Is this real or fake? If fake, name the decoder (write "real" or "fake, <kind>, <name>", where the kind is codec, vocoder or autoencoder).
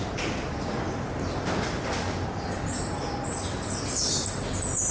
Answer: real